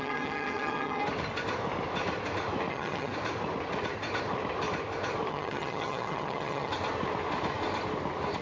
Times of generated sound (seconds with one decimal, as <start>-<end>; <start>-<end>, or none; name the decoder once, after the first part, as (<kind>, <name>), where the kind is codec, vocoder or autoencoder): 0.0-1.0 (vocoder, HiFi-GAN); 2.7-3.1; 5.3-6.7